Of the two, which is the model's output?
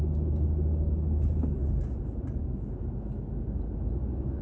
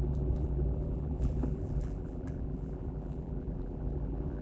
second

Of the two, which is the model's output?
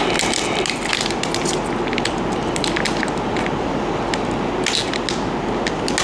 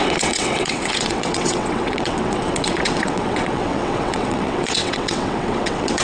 second